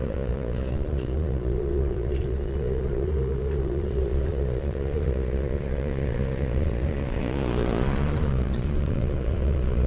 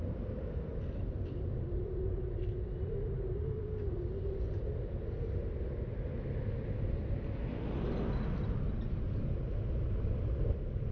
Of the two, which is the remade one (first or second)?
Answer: first